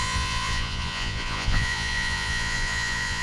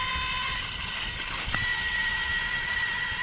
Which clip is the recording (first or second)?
second